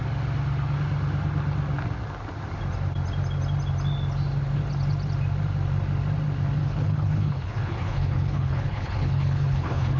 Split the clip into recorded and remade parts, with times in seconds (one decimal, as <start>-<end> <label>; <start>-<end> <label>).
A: 0.0-6.6 recorded; 6.6-10.0 remade

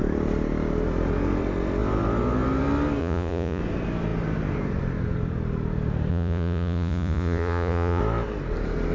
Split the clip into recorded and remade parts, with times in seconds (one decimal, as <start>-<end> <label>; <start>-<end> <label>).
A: 0.0-3.0 recorded; 3.0-3.6 remade; 3.6-6.1 recorded; 6.1-8.0 remade; 8.0-8.9 recorded

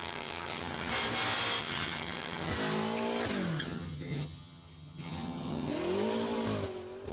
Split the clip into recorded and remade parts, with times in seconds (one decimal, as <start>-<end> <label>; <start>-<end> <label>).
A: 0.0-0.9 remade; 0.9-1.6 recorded; 1.6-2.5 remade; 2.5-3.6 recorded; 3.6-5.7 remade; 5.7-7.1 recorded

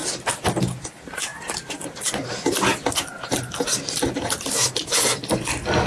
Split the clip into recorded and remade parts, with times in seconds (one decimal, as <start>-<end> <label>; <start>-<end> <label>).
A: 0.0-5.9 recorded

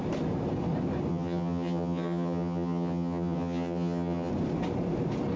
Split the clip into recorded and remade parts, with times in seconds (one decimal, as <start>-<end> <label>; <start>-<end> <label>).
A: 0.0-1.1 recorded; 1.1-4.3 remade; 4.3-5.4 recorded

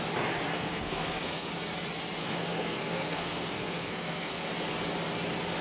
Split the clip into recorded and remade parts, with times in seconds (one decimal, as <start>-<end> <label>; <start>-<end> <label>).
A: 0.0-0.5 recorded; 0.5-1.5 remade; 1.5-2.2 recorded; 2.2-4.5 remade; 4.5-5.6 recorded

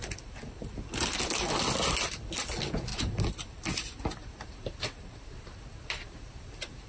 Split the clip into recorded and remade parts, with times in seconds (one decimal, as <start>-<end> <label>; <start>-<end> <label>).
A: 0.0-6.9 recorded